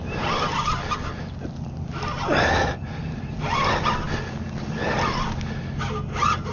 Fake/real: real